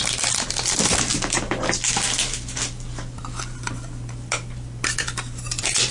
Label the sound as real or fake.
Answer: real